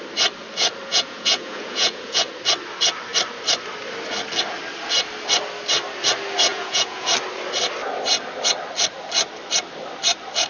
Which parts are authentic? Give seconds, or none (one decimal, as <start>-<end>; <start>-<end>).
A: 0.0-0.9; 2.3-6.5; 7.1-10.5

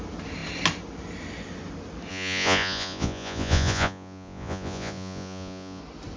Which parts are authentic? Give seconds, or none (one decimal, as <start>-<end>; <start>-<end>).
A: 0.0-2.1; 5.8-6.2

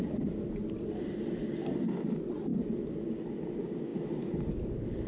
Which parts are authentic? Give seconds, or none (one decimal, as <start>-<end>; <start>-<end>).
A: 0.0-5.1

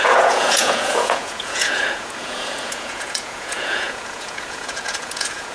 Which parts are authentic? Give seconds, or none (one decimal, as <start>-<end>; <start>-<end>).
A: none

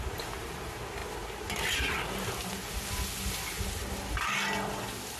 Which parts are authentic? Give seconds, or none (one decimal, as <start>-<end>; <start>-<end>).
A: 0.0-5.2